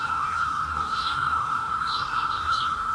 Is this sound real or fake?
fake